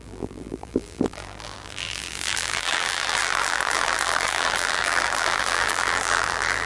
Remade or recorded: remade